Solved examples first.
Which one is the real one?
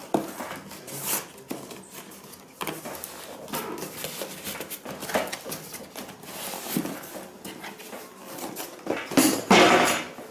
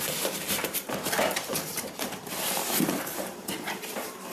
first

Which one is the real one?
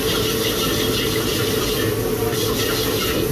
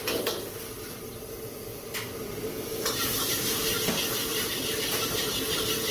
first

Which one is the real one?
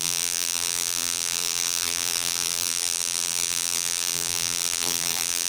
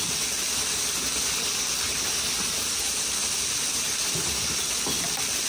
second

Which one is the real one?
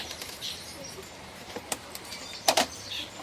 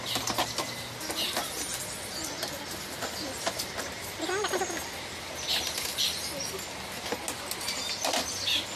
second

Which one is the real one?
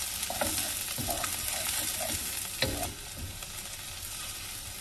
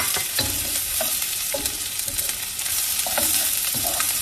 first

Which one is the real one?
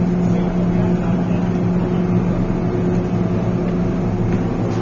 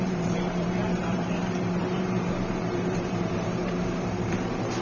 first